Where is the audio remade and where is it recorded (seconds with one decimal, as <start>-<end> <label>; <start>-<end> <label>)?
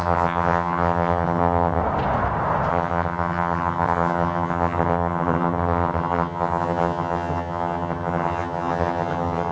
0.0-1.8 remade; 1.8-2.7 recorded; 2.7-9.5 remade